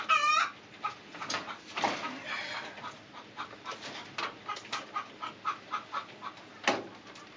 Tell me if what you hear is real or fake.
real